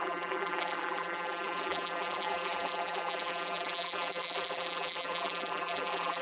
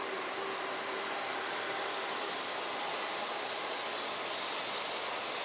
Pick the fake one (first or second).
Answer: first